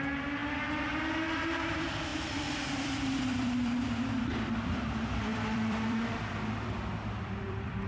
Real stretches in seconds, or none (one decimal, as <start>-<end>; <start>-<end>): 0.0-2.1; 4.2-5.3